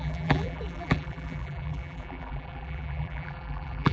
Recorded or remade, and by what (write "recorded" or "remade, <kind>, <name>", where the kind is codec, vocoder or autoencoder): remade, vocoder, BigVGAN v2